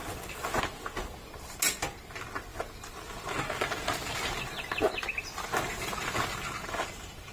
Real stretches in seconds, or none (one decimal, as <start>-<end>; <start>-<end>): 0.0-7.3